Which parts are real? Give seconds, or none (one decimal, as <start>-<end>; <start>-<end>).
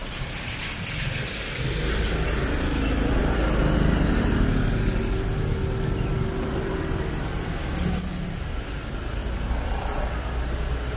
0.6-9.2; 10.0-11.0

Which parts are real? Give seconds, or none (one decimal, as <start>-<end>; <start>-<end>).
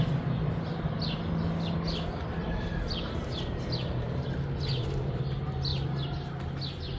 0.0-2.4; 5.2-5.7; 6.4-7.0